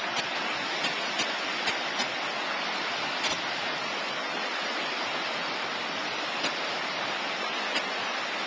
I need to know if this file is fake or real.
real